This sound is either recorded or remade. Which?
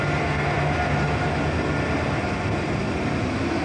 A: recorded